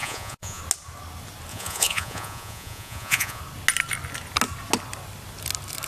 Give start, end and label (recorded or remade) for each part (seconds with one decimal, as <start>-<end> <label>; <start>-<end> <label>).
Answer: 0.0-0.6 remade; 0.6-1.5 recorded; 1.5-3.4 remade; 3.4-5.9 recorded